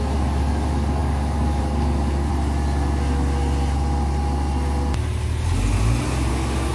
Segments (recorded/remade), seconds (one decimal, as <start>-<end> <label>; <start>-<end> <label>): 0.0-2.3 remade; 2.3-6.3 recorded; 6.3-6.7 remade